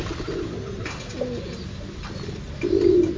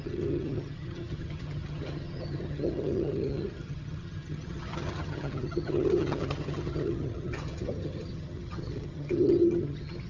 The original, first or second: first